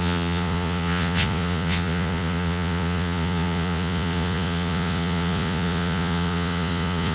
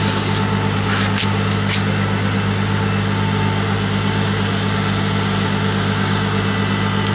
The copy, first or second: first